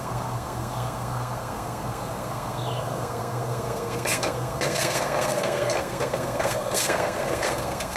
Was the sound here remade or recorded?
remade